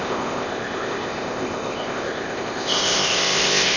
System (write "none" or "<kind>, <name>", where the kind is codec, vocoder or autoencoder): codec, ZipCodec